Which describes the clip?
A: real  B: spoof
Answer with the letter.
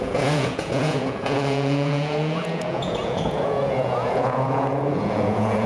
B